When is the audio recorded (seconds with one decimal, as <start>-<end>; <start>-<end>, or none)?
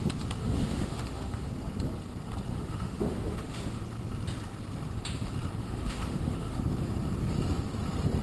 0.0-0.4; 1.5-2.5; 3.8-5.6; 6.6-8.2